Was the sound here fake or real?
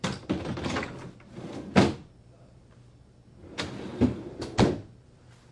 real